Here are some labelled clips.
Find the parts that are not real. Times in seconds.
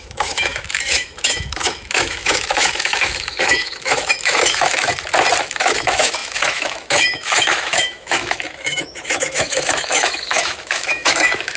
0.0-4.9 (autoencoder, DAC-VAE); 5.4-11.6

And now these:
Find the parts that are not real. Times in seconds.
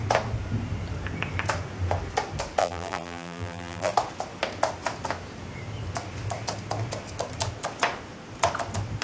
2.6-3.9 (vocoder, BigVGAN v2)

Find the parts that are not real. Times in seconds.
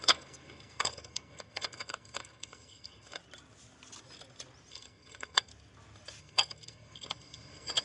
0.0-3.2 (codec, SNAC); 4.7-5.5; 6.2-7.8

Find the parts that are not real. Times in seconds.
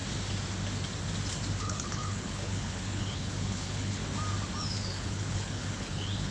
1.6-4.0 (codec, HILCodec); 4.6-6.3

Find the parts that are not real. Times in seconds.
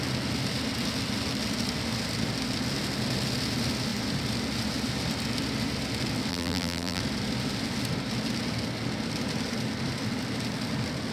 6.3-7.0 (vocoder, BigVGAN v2)